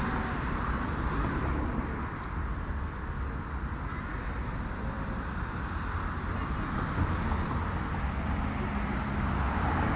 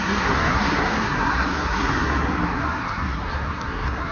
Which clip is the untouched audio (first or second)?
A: first